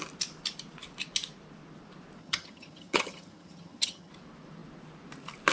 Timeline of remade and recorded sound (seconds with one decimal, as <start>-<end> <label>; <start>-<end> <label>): 0.0-2.2 recorded; 2.2-4.1 remade; 4.1-5.5 recorded